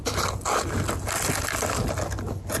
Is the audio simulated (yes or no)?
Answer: no